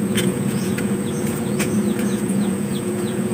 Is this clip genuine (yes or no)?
no